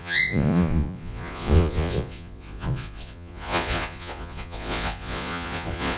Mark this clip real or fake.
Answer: fake